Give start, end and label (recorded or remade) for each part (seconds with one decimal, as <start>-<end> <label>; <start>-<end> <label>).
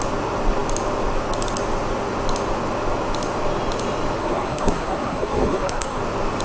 0.0-4.2 recorded; 4.2-6.0 remade; 6.0-6.4 recorded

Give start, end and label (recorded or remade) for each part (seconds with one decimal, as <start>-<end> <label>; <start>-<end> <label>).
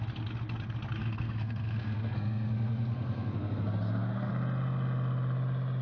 0.0-1.0 recorded; 1.0-4.3 remade; 4.3-5.8 recorded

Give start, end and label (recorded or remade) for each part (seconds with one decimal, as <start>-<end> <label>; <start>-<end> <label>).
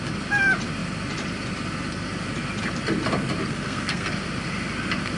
0.0-3.5 recorded; 3.5-4.1 remade; 4.1-5.2 recorded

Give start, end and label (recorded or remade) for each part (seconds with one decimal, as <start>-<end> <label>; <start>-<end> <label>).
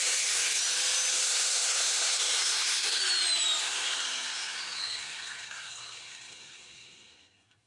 0.0-0.6 remade; 0.6-1.1 recorded; 1.1-3.0 remade; 3.0-3.6 recorded; 3.6-7.7 remade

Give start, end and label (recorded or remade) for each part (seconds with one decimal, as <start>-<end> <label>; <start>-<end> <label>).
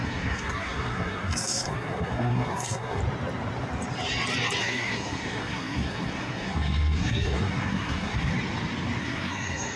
0.0-3.0 remade; 3.0-4.6 recorded; 4.6-8.3 remade; 8.3-9.0 recorded; 9.0-9.8 remade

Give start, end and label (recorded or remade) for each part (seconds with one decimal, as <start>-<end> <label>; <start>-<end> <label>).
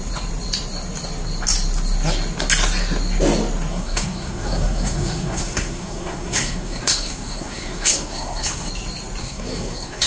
0.0-3.7 recorded; 3.7-8.7 remade; 8.7-9.2 recorded; 9.2-10.1 remade